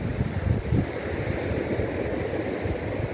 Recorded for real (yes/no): yes